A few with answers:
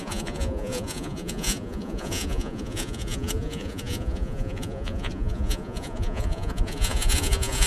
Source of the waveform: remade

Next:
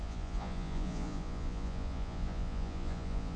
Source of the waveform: remade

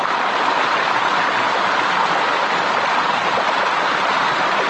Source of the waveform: recorded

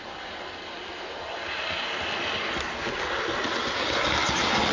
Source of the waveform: recorded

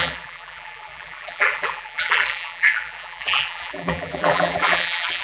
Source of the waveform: remade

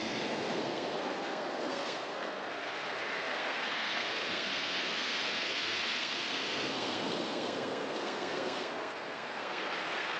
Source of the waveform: remade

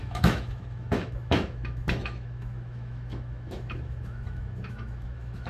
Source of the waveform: remade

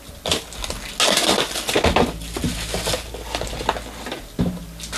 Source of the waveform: recorded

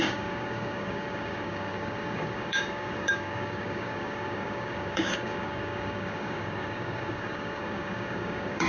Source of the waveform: remade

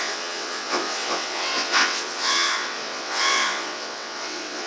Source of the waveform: remade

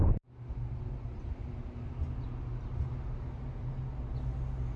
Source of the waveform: recorded